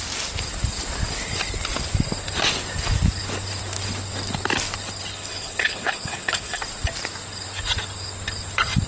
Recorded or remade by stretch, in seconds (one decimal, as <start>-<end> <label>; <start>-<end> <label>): 0.0-5.1 recorded; 5.1-6.6 remade; 6.6-8.9 recorded